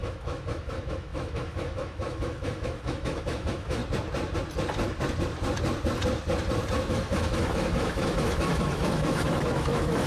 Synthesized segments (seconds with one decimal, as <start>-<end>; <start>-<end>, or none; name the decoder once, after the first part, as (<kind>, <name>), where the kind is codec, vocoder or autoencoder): 0.0-3.8 (autoencoder, DAC-VAE); 6.9-10.1